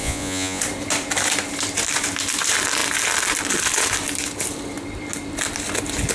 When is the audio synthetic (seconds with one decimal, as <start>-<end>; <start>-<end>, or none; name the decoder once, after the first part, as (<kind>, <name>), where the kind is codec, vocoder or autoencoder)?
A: 0.0-0.6 (vocoder, Vocos)